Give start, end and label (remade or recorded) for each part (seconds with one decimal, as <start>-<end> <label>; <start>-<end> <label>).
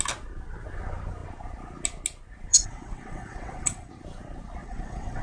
0.0-2.5 recorded; 2.5-3.9 remade; 3.9-4.6 recorded; 4.6-5.2 remade